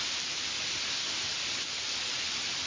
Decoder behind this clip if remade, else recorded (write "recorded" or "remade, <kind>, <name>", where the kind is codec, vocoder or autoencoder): recorded